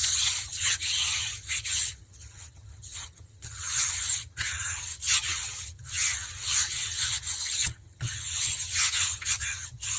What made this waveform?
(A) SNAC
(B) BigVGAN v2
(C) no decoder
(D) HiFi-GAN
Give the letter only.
D